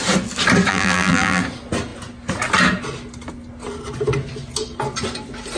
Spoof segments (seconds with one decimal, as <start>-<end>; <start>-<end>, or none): 0.7-1.4